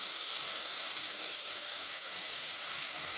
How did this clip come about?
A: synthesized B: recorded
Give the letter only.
A